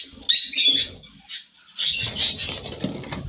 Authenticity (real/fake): real